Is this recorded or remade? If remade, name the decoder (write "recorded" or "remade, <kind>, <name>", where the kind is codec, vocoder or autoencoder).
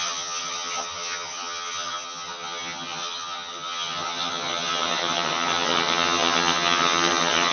remade, vocoder, HiFi-GAN